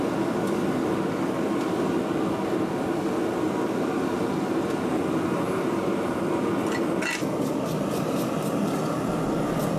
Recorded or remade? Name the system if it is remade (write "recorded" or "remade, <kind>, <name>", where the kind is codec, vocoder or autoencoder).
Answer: recorded